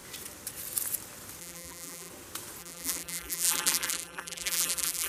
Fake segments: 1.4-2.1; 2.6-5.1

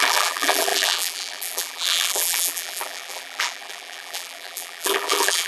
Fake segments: 0.0-5.5

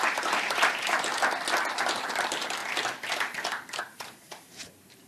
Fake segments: 0.0-1.1; 1.7-2.6; 3.8-5.1

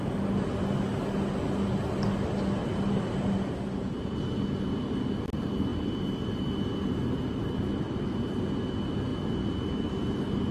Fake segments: 2.6-4.1; 5.7-6.5

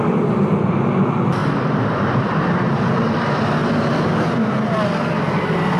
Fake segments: 0.0-3.6